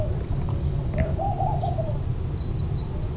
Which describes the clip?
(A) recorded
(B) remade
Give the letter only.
A